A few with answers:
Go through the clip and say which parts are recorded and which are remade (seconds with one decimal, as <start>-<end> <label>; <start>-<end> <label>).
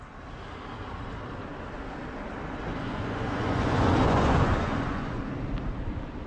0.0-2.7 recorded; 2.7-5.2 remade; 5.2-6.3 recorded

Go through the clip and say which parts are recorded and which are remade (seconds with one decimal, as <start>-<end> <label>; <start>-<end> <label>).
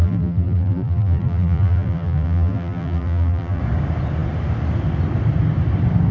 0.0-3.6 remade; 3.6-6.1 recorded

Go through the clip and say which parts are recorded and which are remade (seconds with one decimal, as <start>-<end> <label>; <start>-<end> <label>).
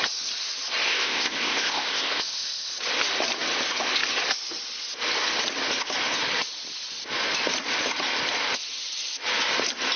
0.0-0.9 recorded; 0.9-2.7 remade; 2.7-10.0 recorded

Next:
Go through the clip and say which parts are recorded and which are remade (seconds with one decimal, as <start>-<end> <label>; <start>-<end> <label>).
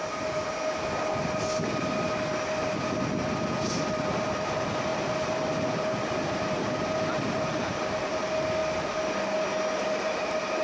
0.0-10.6 recorded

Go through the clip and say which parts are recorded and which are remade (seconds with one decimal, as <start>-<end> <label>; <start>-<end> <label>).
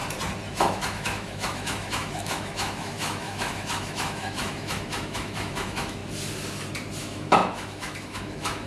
0.0-0.5 recorded; 0.5-6.0 remade; 6.0-7.0 recorded; 7.0-8.7 remade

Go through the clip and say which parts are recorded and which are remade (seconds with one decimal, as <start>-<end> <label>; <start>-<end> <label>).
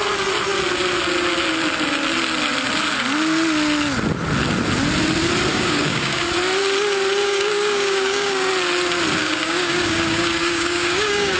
0.0-5.5 recorded; 5.5-6.3 remade; 6.3-7.2 recorded; 7.2-8.5 remade; 8.5-9.2 recorded; 9.2-11.4 remade